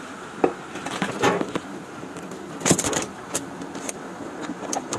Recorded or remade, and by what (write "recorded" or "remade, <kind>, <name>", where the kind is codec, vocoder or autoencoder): recorded